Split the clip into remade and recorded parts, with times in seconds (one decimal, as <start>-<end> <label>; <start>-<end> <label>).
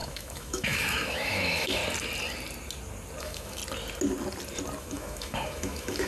0.0-1.8 remade; 1.8-3.2 recorded; 3.2-3.6 remade; 3.6-4.8 recorded; 4.8-6.1 remade